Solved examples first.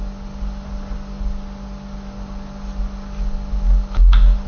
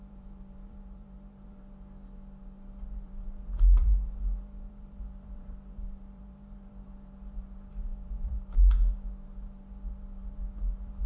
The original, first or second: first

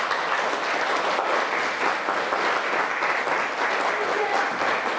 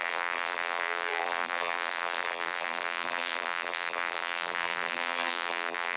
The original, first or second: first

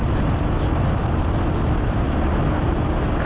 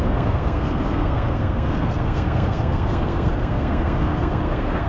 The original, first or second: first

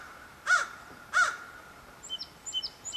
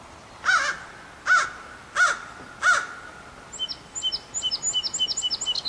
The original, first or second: second